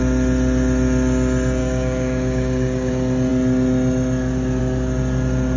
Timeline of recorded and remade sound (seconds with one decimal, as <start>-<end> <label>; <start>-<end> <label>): 0.0-1.6 recorded; 1.6-2.9 remade; 2.9-5.6 recorded